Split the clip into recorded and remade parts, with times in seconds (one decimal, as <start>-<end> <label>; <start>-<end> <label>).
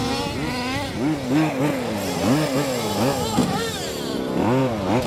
0.0-5.1 recorded